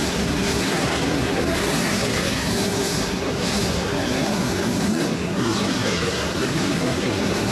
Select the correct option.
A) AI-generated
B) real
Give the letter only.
A